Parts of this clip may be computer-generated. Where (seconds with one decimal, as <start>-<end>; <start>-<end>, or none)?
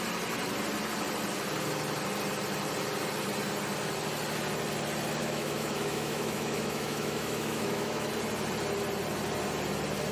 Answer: 5.2-8.1